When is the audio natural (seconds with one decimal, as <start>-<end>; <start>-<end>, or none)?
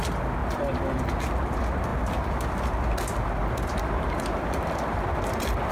0.0-5.7